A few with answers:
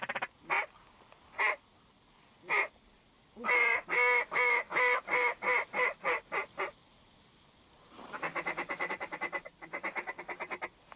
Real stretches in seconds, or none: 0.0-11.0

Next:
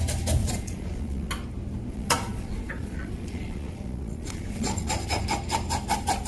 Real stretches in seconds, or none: 0.0-0.4; 1.3-1.9; 5.2-6.3

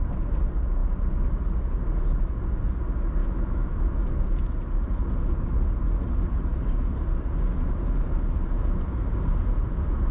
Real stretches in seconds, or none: 0.0-3.2; 3.8-10.1

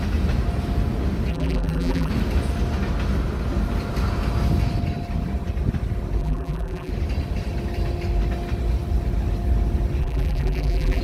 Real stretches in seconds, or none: 0.0-1.3; 2.1-6.2; 6.9-10.0

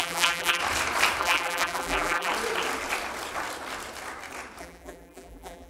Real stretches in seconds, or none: 0.6-1.2; 2.3-4.6

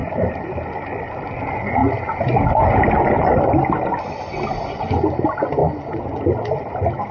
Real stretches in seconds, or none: 0.0-7.1

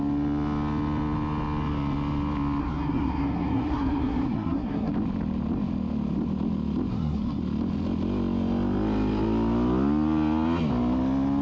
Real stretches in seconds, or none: 0.0-2.6; 4.9-6.9; 7.4-11.4

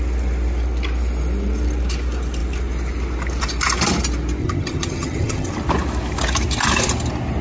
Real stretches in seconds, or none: 0.0-4.4; 5.5-7.4